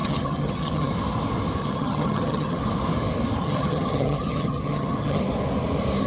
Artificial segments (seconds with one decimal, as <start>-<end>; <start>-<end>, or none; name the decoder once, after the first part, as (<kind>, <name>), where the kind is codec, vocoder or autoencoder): 0.0-0.9 (vocoder, HiFi-GAN); 1.6-2.6; 3.4-5.2